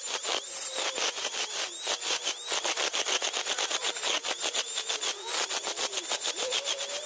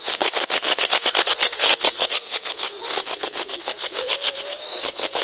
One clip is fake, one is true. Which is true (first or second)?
first